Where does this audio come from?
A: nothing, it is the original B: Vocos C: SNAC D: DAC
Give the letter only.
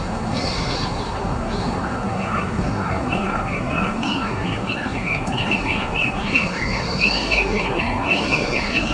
C